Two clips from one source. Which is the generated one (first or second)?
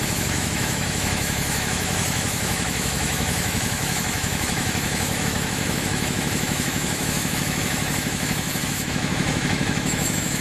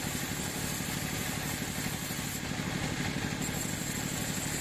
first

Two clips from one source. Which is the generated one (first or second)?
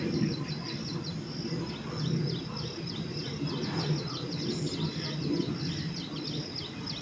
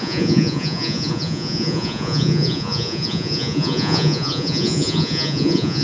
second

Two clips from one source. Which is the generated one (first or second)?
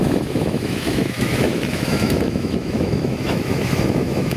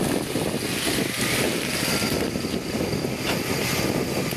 first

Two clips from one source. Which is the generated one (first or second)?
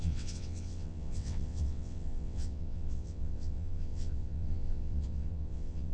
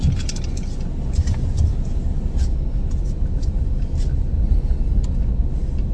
first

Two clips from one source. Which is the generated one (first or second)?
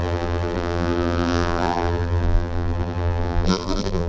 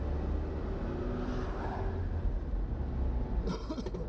first